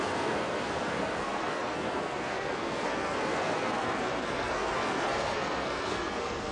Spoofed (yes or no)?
yes